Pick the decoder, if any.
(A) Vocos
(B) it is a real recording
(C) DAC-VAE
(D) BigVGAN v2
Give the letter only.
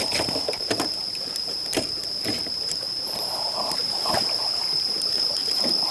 D